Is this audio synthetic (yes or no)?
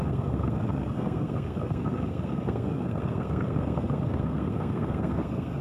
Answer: yes